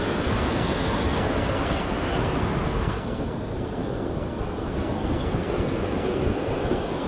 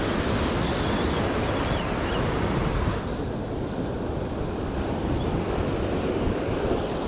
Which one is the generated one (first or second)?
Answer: first